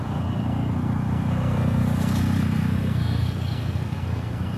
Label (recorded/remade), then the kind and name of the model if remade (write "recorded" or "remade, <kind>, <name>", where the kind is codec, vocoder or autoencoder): remade, codec, SNAC